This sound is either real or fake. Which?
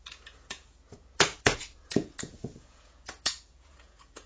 fake